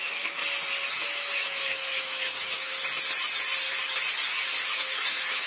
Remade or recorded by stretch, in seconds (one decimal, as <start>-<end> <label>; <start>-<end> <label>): 0.0-0.4 remade; 0.4-0.9 recorded; 0.9-2.7 remade; 2.7-4.6 recorded; 4.6-5.5 remade